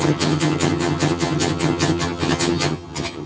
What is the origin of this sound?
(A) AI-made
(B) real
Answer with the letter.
A